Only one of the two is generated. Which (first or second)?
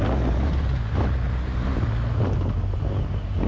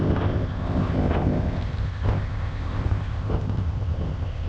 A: second